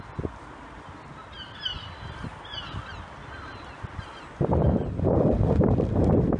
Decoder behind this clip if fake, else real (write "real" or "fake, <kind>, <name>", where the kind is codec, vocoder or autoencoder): real